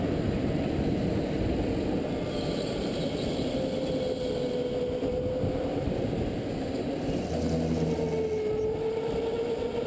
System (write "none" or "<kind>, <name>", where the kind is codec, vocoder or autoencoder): none